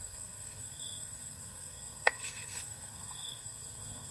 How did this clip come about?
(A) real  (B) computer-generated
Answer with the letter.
B